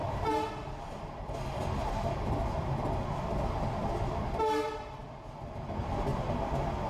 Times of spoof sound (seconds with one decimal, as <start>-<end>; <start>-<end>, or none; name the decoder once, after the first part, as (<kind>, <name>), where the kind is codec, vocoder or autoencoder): none